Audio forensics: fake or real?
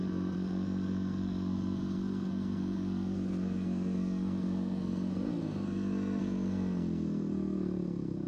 fake